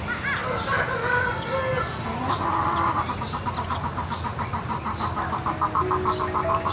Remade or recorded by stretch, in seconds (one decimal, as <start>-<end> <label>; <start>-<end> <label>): 0.0-4.3 recorded; 4.3-5.0 remade; 5.0-6.7 recorded